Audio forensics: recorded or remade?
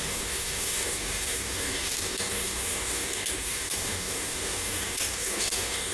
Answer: remade